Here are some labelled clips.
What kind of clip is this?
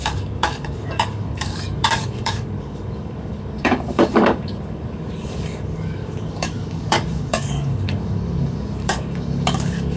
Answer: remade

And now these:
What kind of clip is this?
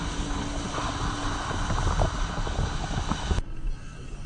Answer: recorded